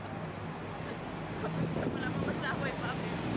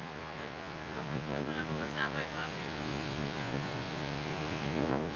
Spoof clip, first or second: second